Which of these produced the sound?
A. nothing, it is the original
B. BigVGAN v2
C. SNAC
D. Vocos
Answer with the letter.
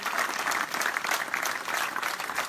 A